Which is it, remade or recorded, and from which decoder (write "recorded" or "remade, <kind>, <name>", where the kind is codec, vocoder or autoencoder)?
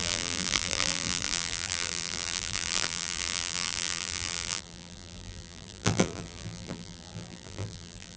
remade, vocoder, BigVGAN v2